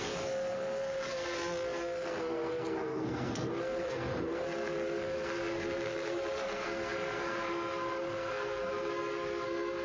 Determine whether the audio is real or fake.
fake